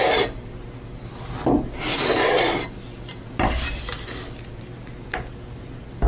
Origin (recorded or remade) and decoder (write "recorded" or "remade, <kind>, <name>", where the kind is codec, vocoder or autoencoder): recorded